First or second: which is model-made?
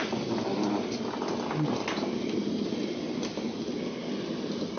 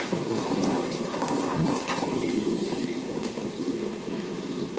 second